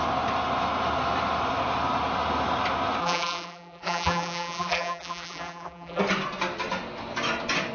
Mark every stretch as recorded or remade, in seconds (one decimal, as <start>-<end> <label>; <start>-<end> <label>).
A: 0.0-3.0 recorded; 3.0-6.0 remade; 6.0-7.7 recorded